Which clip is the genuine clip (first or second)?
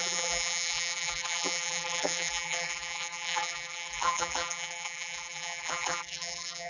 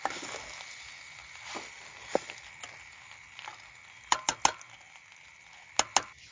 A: second